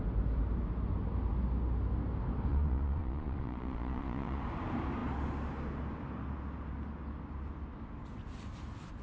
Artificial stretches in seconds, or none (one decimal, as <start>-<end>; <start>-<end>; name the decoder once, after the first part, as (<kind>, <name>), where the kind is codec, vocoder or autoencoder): 2.5-4.4 (vocoder, Vocos)